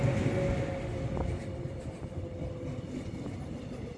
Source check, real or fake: real